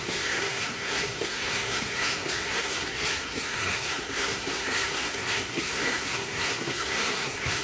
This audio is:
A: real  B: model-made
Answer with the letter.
B